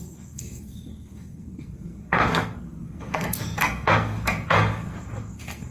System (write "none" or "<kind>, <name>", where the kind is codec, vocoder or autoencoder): codec, SNAC